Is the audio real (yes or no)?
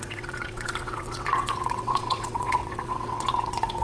no